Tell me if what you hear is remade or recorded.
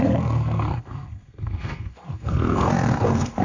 remade